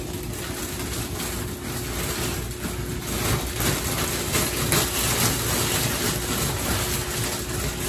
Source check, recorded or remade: recorded